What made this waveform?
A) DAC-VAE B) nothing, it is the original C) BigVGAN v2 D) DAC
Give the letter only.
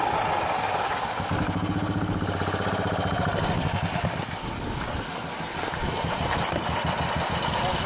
B